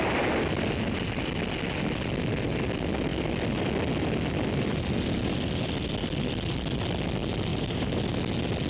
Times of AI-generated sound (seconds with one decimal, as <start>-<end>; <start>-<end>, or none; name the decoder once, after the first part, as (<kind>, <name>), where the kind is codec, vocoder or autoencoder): 7.5-8.0 (vocoder, BigVGAN v2)